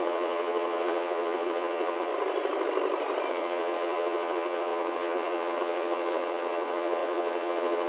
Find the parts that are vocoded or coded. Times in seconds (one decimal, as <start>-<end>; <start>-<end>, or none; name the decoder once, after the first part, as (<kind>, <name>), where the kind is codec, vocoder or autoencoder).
0.0-2.1 (vocoder, Vocos); 3.3-7.9